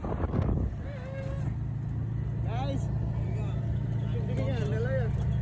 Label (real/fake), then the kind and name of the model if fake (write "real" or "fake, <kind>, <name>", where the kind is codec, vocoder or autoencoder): real